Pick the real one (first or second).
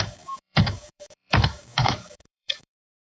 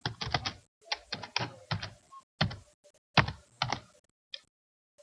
second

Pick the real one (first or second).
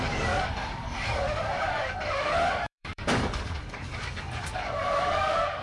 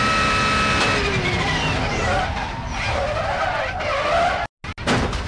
second